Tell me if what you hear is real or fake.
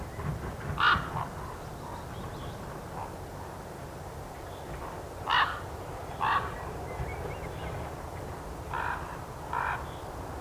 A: real